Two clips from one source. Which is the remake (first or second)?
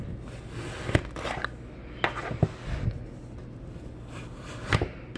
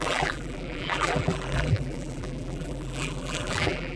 second